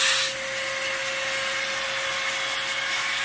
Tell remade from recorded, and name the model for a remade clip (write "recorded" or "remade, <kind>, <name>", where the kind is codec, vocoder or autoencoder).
recorded